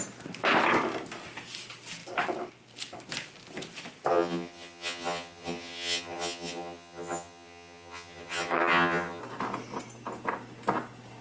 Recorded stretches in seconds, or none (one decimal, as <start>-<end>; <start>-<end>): 0.0-4.1; 9.2-11.2